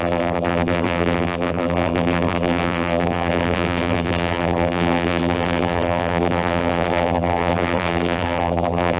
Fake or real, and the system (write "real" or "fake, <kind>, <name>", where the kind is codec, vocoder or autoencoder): fake, vocoder, BigVGAN v2